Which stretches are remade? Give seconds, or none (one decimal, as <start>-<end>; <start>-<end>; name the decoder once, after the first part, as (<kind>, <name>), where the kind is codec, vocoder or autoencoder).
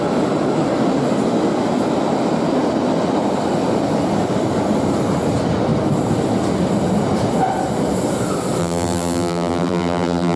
8.6-10.4 (vocoder, BigVGAN v2)